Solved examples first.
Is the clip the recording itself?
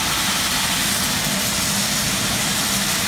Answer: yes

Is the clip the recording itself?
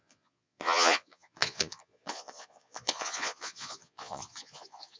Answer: no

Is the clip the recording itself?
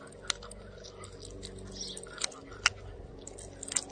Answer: yes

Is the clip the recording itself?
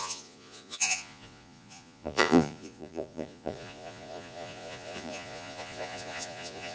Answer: no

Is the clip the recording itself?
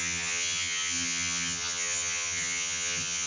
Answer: no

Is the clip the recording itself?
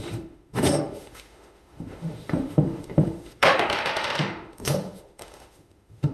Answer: no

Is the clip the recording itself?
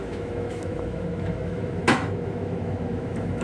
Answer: no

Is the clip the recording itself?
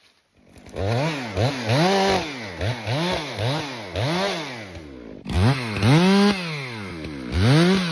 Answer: yes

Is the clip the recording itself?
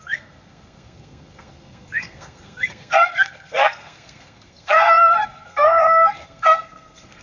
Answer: no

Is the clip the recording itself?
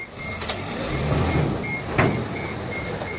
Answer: yes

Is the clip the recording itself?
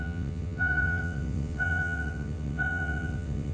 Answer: no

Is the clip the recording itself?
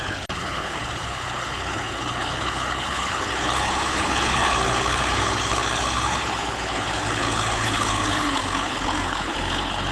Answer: no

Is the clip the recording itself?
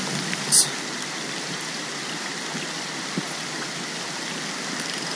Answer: yes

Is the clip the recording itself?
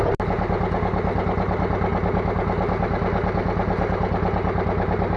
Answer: yes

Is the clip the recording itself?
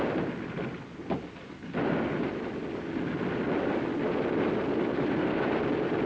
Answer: yes